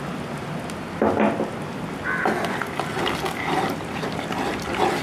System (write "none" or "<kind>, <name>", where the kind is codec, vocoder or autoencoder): none